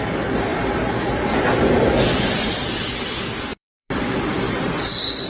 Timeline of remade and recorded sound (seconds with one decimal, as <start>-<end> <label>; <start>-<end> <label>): 0.0-0.5 recorded; 0.5-1.4 remade; 1.4-3.5 recorded; 3.5-4.0 remade; 4.0-5.3 recorded